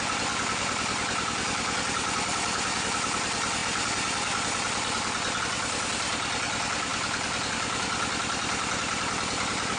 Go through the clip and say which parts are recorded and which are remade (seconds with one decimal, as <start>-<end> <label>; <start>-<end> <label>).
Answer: 0.0-9.8 recorded